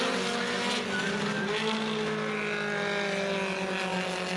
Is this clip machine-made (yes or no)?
no